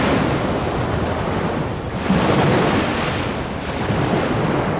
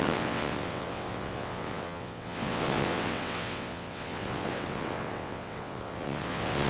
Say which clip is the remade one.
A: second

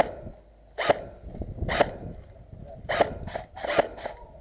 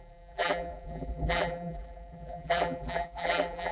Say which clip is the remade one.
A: second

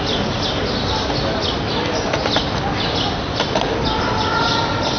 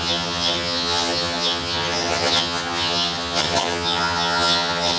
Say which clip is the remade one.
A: second